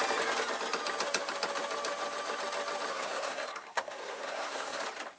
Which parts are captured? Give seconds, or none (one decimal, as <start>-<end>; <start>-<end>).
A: 0.0-2.9; 4.8-5.2